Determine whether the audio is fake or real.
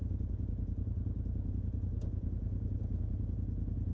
fake